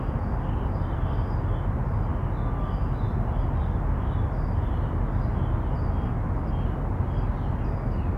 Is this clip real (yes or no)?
yes